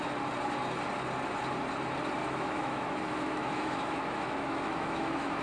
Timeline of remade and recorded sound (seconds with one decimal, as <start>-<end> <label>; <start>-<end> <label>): 0.0-2.2 recorded; 2.2-5.4 remade